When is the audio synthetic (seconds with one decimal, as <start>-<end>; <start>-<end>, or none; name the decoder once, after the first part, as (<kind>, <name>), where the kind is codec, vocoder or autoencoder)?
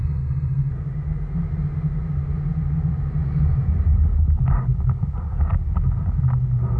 0.0-0.7 (codec, SNAC)